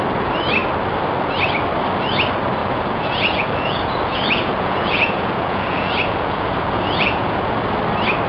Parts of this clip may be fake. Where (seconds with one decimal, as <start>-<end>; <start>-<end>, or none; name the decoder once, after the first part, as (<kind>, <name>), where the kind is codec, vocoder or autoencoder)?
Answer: 2.6-7.6 (vocoder, Vocos)